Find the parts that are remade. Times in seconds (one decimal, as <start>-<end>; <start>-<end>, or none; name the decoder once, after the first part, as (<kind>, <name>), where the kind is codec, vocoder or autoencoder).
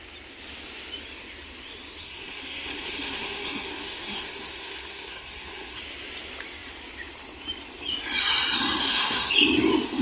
2.0-5.8 (codec, SNAC); 8.8-9.3